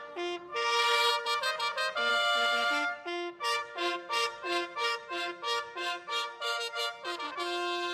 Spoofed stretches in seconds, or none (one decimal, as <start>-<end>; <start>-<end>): 0.5-1.1; 2.1-6.8